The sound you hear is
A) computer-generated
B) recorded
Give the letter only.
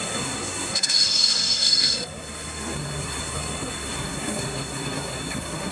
A